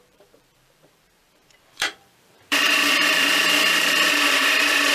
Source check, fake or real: fake